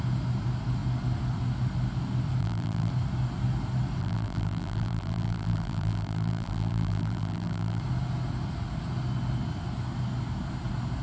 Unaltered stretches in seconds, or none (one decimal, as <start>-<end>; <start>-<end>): 0.0-2.4; 2.9-4.0; 7.8-11.0